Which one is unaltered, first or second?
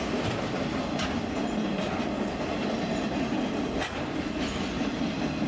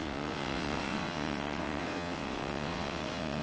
first